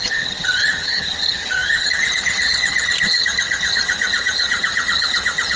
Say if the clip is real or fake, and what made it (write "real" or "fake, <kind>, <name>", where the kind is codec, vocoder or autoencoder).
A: fake, vocoder, HiFi-GAN